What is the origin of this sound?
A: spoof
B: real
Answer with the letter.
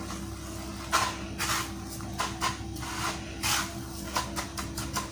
B